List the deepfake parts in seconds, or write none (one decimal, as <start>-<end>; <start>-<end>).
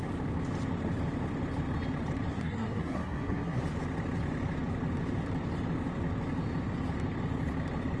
2.3-3.6